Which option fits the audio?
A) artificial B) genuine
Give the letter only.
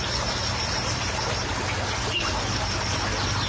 B